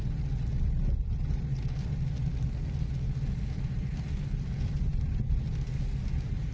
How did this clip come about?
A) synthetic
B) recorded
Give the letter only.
B